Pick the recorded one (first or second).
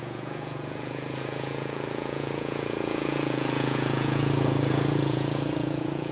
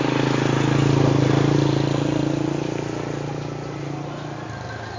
second